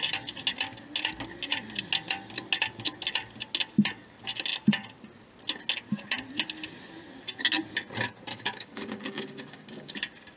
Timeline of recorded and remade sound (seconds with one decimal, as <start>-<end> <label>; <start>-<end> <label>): 0.0-8.3 recorded; 8.3-9.9 remade; 9.9-10.4 recorded

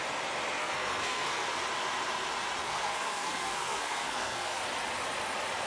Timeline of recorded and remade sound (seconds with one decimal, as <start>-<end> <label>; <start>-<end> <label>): 0.0-0.6 recorded; 0.6-1.6 remade; 1.6-2.6 recorded; 2.6-4.6 remade; 4.6-5.7 recorded

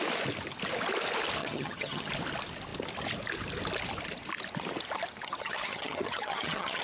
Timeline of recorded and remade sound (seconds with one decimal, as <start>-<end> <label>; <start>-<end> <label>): 0.0-1.4 recorded; 1.4-2.1 remade; 2.1-5.2 recorded; 5.2-6.8 remade

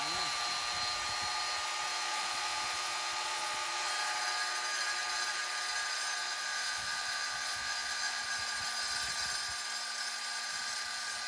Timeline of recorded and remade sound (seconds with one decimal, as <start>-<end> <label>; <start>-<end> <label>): 0.0-1.9 recorded; 1.9-3.9 remade; 3.9-6.2 recorded; 6.2-8.2 remade; 8.2-11.3 recorded

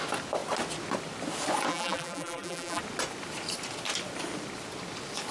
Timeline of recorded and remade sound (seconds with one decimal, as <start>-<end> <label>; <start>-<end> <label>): 0.0-1.7 recorded; 1.7-2.8 remade; 2.8-5.3 recorded